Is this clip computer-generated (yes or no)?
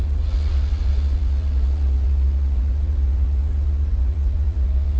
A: yes